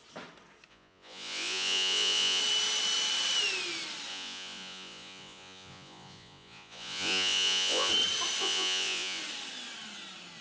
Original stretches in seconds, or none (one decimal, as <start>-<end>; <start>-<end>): 0.0-0.7; 2.4-4.1; 7.9-8.4; 9.2-10.4